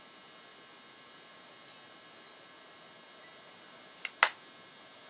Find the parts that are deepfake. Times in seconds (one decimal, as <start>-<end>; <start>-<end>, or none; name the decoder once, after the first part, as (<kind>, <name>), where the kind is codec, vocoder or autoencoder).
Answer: none